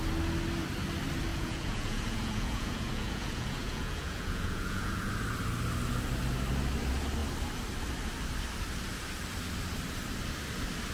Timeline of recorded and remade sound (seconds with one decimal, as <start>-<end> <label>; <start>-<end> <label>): 0.0-1.3 recorded; 1.3-5.1 remade; 5.1-10.9 recorded